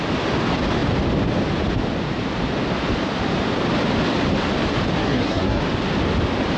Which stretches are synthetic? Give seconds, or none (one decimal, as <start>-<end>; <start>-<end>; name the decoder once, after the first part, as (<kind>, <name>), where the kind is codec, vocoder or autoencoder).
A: 5.0-5.6 (codec, SNAC)